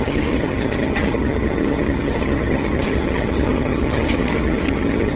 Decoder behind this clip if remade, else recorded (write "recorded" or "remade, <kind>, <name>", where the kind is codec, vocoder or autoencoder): remade, vocoder, HiFi-GAN